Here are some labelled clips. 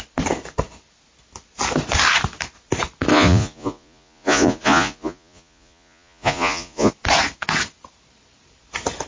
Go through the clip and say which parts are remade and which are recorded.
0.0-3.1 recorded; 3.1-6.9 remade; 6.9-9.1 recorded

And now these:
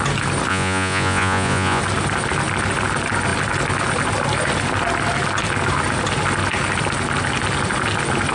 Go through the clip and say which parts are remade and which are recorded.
0.0-0.5 recorded; 0.5-1.8 remade; 1.8-8.3 recorded

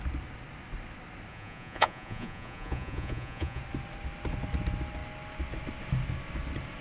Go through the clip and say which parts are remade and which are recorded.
0.0-1.3 recorded; 1.3-3.6 remade; 3.6-6.8 recorded

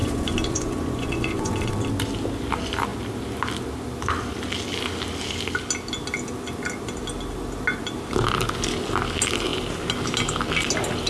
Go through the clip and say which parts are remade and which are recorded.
0.0-1.7 remade; 1.7-11.1 recorded